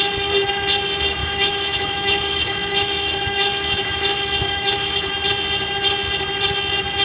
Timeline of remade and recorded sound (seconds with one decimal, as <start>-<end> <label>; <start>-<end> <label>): 0.0-1.2 recorded; 1.2-5.1 remade; 5.1-7.0 recorded